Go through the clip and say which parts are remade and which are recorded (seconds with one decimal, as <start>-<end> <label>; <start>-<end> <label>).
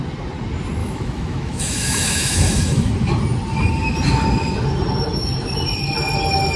0.0-0.8 recorded; 0.8-2.9 remade; 2.9-6.6 recorded